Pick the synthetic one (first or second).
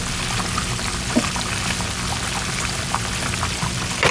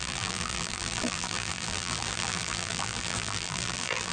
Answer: second